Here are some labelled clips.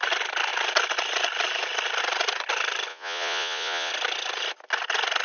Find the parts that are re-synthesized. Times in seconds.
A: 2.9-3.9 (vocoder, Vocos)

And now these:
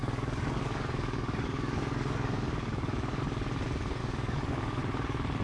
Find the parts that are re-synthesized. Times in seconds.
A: 0.0-3.2 (codec, DAC); 4.0-4.8

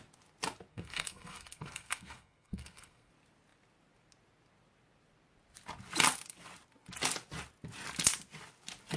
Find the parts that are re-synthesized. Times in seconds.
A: 0.7-3.1 (codec, SNAC)

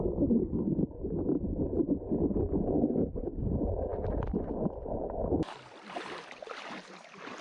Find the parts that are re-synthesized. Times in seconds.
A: none

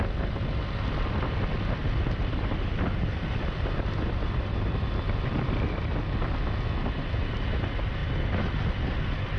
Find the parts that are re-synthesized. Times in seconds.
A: 1.8-6.0 (vocoder, BigVGAN v2); 8.0-9.4

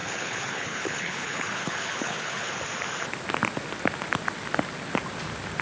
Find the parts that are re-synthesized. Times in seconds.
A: 0.0-2.5 (codec, HILCodec)

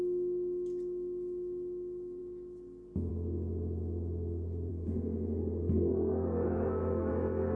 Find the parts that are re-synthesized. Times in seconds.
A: 4.7-7.1 (codec, SNAC)